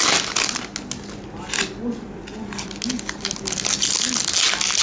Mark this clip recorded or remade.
recorded